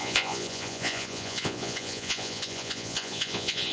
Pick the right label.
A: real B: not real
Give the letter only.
B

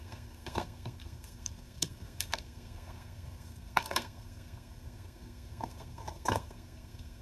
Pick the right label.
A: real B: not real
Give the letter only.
B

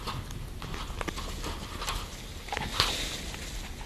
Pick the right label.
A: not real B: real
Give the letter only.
B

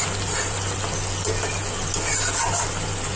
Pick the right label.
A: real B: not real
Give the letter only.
A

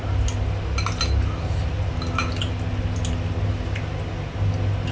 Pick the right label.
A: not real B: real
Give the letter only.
B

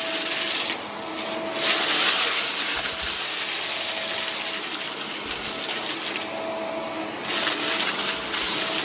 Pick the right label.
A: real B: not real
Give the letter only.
A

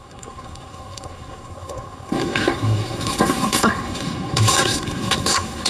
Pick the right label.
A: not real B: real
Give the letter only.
A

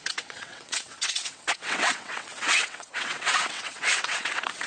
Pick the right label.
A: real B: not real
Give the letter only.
B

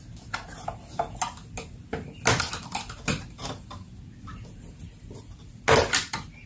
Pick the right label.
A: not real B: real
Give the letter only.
B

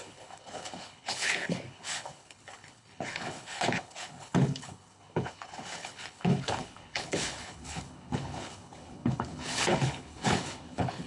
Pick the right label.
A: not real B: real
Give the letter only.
A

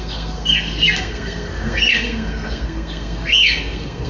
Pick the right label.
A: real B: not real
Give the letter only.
B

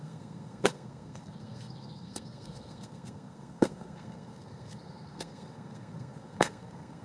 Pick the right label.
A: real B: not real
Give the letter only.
B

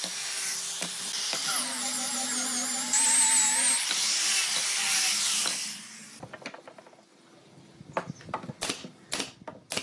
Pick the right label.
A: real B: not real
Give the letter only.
A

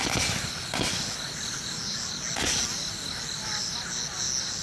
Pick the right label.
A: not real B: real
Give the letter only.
B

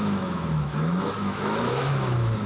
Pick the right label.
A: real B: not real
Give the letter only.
B